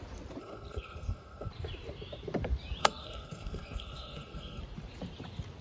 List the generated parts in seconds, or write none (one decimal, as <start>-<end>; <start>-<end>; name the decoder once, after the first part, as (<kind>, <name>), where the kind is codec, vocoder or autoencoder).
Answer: 0.4-1.5 (codec, SNAC); 2.8-4.6